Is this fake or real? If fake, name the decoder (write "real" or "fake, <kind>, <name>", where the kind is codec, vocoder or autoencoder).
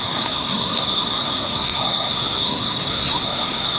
fake, codec, SNAC